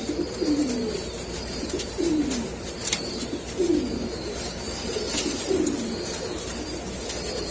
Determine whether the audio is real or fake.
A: real